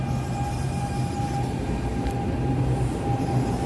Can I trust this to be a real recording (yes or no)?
no